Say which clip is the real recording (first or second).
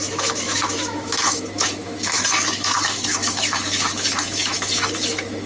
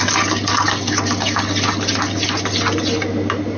second